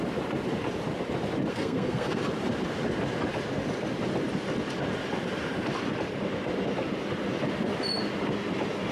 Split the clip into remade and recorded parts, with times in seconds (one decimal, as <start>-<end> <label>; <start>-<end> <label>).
0.0-1.5 recorded; 1.5-2.2 remade; 2.2-8.9 recorded